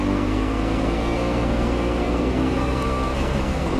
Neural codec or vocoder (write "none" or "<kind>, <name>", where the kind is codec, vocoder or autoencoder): codec, SNAC